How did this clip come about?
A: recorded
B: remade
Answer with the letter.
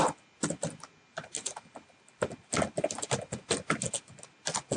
A